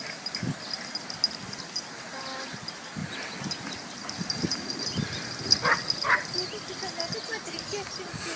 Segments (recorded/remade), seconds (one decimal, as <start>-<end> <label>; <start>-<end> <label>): 0.0-8.4 recorded

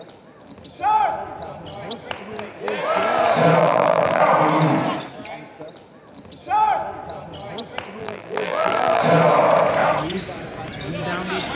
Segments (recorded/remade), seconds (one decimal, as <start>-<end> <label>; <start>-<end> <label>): 0.0-3.6 recorded; 3.6-4.2 remade; 4.2-8.0 recorded; 8.0-9.0 remade; 9.0-11.6 recorded

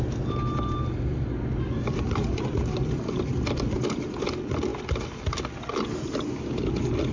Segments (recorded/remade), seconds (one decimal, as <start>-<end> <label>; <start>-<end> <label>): 0.0-7.1 recorded

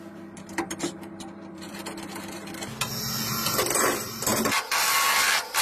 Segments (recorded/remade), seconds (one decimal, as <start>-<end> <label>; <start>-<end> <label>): 0.0-2.4 remade; 2.4-3.6 recorded; 3.6-4.3 remade; 4.3-5.1 recorded; 5.1-5.6 remade